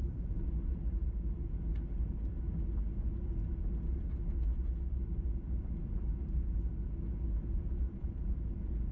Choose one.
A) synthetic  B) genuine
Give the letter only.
B